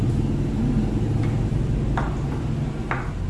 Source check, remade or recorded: recorded